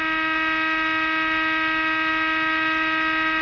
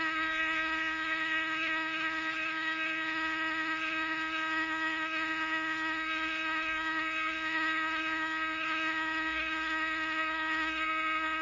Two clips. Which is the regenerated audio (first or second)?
second